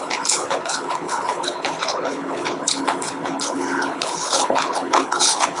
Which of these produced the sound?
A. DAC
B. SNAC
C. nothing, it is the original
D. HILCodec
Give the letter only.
D